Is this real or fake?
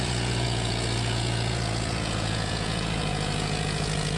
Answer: fake